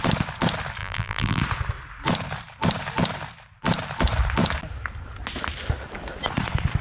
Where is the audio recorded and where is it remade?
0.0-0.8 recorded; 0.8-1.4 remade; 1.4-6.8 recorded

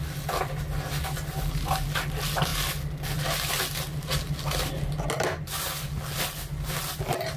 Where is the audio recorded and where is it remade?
0.0-7.4 recorded

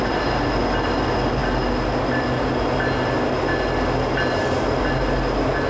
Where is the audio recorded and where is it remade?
0.0-5.7 recorded

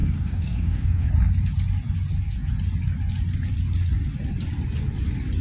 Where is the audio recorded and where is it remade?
0.0-1.1 remade; 1.1-5.4 recorded

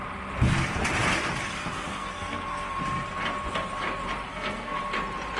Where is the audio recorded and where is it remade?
0.0-1.6 recorded; 1.6-2.8 remade; 2.8-4.3 recorded; 4.3-4.8 remade; 4.8-5.4 recorded

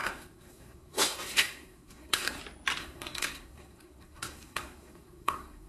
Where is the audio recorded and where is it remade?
0.0-2.4 remade; 2.4-2.8 recorded; 2.8-5.7 remade

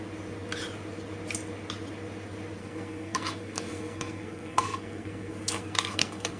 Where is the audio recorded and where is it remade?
0.0-2.6 recorded; 2.6-6.4 remade